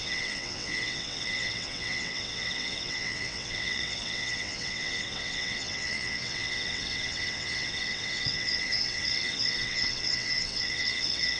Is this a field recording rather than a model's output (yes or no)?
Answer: no